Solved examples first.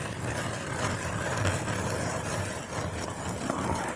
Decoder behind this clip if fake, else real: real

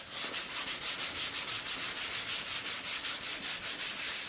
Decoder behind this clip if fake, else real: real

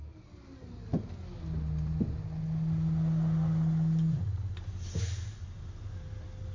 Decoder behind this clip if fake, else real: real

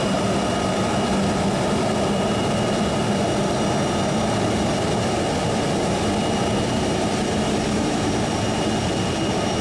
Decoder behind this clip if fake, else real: real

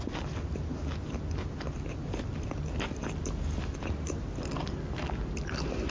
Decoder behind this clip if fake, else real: real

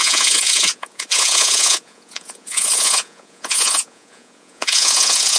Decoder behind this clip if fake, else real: fake, vocoder, Vocos